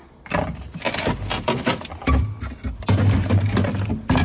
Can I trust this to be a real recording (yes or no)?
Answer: yes